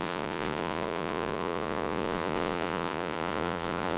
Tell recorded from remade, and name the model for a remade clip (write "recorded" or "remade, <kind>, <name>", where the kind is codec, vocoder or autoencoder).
remade, vocoder, Vocos